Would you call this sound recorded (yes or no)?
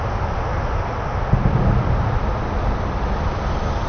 yes